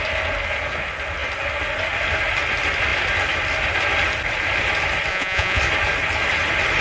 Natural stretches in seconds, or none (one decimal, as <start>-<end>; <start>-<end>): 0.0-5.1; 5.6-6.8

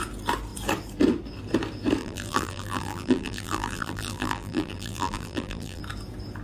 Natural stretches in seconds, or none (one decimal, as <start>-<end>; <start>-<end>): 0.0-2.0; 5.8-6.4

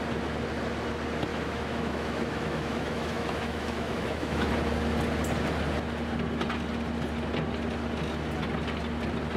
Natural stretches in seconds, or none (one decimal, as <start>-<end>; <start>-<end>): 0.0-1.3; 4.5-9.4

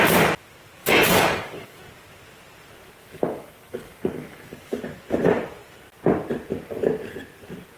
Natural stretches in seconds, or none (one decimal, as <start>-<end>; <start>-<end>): 0.0-0.8; 1.8-3.0; 4.8-7.8

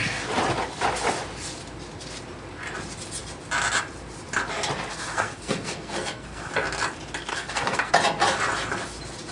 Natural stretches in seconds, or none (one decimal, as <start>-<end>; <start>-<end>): 0.0-4.9; 6.5-7.3; 7.9-9.3